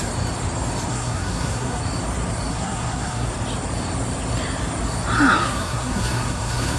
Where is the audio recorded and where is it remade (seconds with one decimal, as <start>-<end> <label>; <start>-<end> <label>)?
0.0-0.9 recorded; 0.9-1.8 remade; 1.8-2.5 recorded; 2.5-3.3 remade; 3.3-5.4 recorded; 5.4-6.8 remade